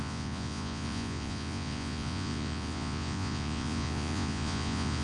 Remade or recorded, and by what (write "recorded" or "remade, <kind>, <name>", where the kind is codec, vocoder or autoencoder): remade, vocoder, Vocos